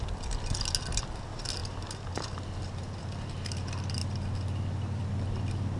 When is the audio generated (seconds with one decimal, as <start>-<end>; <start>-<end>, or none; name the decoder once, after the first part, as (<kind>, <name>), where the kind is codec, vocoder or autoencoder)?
none